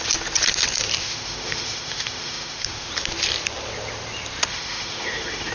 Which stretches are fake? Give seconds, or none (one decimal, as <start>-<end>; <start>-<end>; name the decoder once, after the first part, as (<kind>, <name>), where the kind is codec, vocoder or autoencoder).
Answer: 1.0-2.9 (autoencoder, DAC-VAE); 4.5-5.5